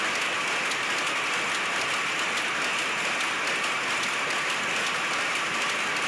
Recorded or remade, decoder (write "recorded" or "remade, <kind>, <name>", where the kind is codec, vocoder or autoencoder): recorded